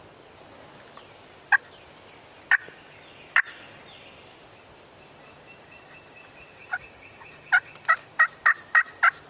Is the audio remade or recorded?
recorded